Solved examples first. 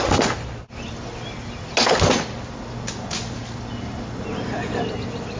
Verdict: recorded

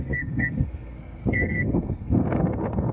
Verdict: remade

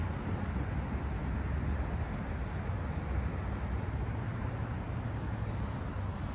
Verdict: recorded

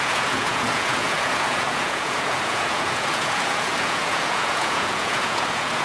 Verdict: remade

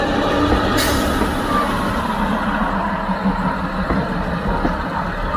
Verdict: recorded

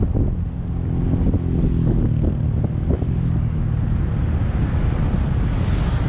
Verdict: recorded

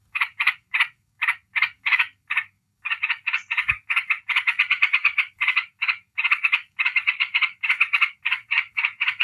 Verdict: remade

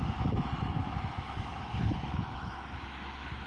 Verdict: remade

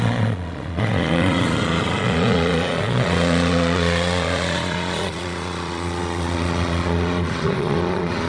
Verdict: remade